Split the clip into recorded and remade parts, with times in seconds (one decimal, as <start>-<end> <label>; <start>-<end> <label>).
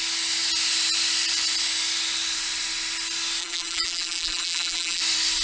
0.0-3.4 recorded; 3.4-5.0 remade; 5.0-5.4 recorded